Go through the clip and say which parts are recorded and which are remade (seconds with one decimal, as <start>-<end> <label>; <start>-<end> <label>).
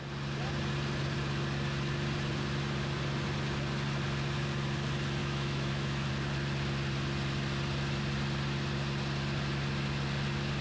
0.0-5.2 recorded; 5.2-6.1 remade; 6.1-10.6 recorded